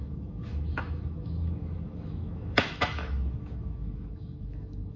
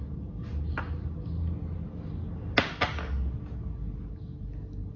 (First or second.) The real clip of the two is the second